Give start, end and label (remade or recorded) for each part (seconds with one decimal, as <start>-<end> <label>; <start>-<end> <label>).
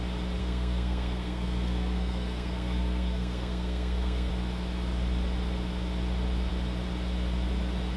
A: 0.0-0.4 recorded; 0.4-4.3 remade; 4.3-8.0 recorded